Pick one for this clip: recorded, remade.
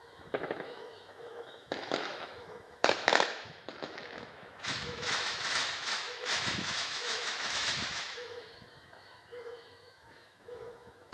remade